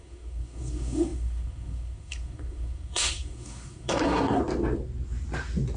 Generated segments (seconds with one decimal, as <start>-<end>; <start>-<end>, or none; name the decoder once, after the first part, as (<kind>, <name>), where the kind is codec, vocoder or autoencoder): 0.0-4.4 (codec, SNAC)